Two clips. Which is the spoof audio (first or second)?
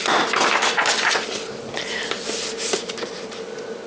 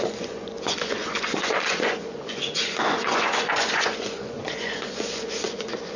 second